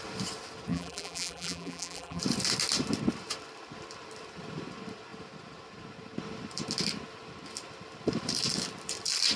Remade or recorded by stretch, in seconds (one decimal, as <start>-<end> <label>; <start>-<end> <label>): 0.0-0.7 recorded; 0.7-2.2 remade; 2.2-9.4 recorded